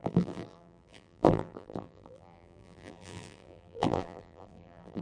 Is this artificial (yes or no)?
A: yes